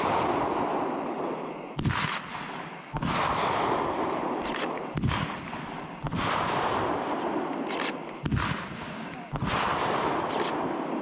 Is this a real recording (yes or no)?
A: yes